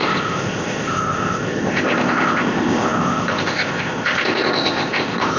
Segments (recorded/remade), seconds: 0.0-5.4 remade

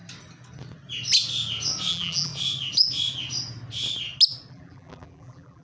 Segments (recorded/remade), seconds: 0.0-1.9 recorded; 1.9-2.3 remade; 2.3-4.5 recorded; 4.5-5.6 remade

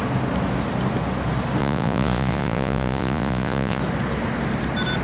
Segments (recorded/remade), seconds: 0.0-1.6 recorded; 1.6-3.8 remade; 3.8-5.0 recorded

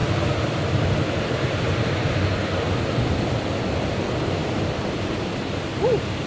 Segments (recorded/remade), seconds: 0.0-6.3 recorded

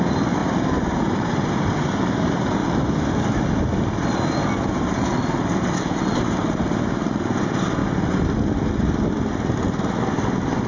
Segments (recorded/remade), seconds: 0.0-2.6 remade; 2.6-5.6 recorded; 5.6-7.8 remade; 7.8-10.7 recorded